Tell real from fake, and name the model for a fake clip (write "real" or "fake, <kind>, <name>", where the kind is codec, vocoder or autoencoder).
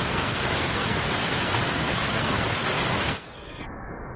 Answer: fake, codec, SNAC